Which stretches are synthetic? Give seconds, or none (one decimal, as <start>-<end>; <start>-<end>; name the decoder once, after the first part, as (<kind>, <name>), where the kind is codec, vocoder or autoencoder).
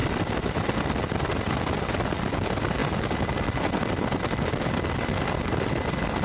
none